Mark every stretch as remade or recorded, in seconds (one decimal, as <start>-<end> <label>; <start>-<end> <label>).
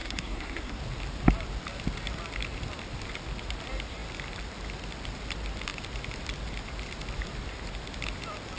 0.0-0.8 remade; 0.8-8.6 recorded